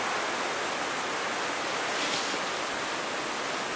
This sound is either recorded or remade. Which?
recorded